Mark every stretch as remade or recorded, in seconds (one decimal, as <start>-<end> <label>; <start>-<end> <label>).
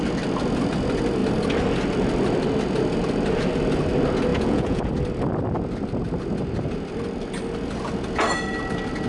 0.0-4.3 recorded; 4.3-4.9 remade; 4.9-9.1 recorded